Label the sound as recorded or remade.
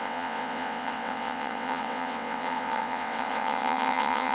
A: remade